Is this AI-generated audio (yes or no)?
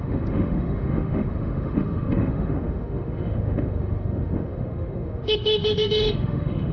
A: yes